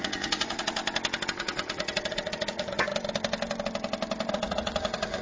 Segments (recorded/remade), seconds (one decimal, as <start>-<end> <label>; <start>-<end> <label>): 0.0-0.8 remade; 0.8-1.4 recorded; 1.4-2.9 remade; 2.9-4.3 recorded; 4.3-5.2 remade